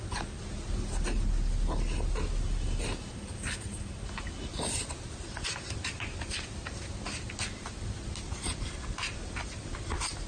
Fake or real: real